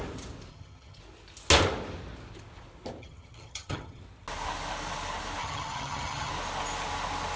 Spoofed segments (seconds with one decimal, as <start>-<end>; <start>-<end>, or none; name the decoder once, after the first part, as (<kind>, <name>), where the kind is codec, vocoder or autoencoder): 0.5-1.0 (vocoder, HiFi-GAN); 3.0-4.0; 5.4-6.3